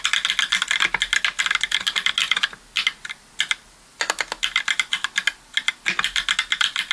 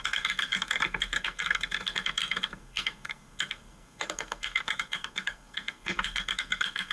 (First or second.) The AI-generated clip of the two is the second